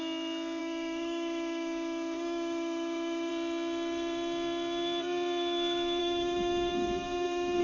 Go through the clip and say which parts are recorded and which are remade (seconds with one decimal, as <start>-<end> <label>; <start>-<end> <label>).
0.0-0.6 recorded; 0.6-3.3 remade; 3.3-6.0 recorded; 6.0-7.6 remade